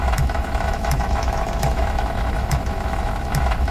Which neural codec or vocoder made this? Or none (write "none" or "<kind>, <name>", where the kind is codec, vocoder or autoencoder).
autoencoder, DAC-VAE